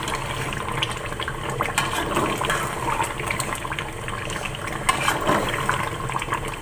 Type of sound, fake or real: real